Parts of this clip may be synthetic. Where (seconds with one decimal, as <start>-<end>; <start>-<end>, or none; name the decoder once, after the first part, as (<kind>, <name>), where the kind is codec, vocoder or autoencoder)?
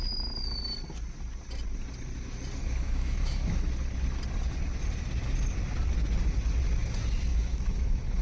2.6-3.7 (autoencoder, DAC-VAE); 7.3-8.2